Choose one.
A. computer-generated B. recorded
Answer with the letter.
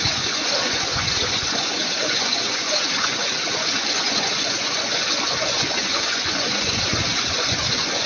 A